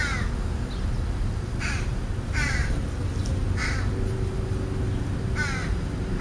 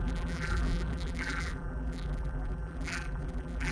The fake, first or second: second